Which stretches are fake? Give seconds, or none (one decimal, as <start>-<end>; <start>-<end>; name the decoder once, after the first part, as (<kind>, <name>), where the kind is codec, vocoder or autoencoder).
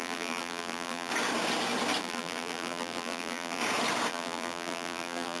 0.0-1.1 (vocoder, BigVGAN v2); 2.0-3.6; 4.1-5.4